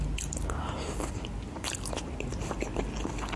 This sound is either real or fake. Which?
real